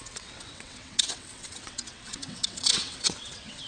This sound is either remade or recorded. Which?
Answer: remade